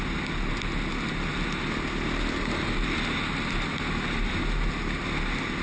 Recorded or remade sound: recorded